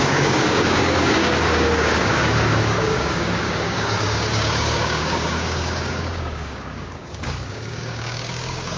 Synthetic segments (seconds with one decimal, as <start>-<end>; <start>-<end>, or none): 0.0-8.8